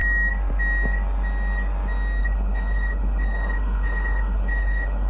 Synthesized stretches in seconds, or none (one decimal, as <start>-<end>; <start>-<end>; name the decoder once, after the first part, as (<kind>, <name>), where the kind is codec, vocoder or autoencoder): 2.2-5.1 (codec, HILCodec)

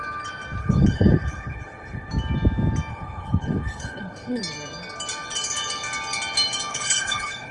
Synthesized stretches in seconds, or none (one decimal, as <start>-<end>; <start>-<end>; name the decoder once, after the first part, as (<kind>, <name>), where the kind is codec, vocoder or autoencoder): 0.6-2.1 (codec, HILCodec); 2.9-4.4; 6.7-7.5

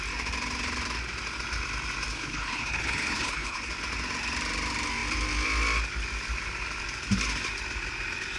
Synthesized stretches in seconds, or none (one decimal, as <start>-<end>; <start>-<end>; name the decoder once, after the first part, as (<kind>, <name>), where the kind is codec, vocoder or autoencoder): 2.1-3.7 (codec, HILCodec)